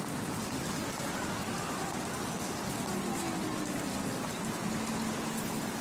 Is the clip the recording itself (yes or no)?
yes